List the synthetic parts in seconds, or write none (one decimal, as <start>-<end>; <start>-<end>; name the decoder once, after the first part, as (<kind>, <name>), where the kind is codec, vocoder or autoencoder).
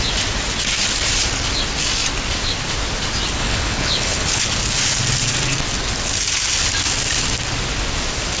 3.4-4.4 (codec, HILCodec)